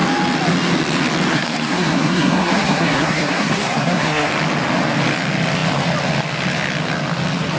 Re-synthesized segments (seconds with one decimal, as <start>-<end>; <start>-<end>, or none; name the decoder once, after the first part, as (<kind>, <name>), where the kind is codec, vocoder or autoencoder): 1.3-4.3 (codec, SNAC)